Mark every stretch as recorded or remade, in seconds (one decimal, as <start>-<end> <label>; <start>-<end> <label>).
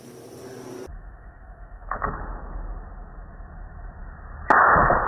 0.0-0.9 recorded; 0.9-2.1 remade; 2.1-5.1 recorded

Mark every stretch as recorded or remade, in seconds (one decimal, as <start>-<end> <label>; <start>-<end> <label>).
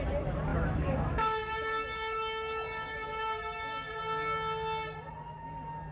0.0-0.5 recorded; 0.5-4.0 remade; 4.0-5.9 recorded